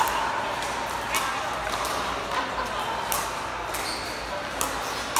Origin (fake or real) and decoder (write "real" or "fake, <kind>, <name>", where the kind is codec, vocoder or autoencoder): real